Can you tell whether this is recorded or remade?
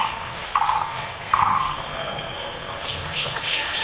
remade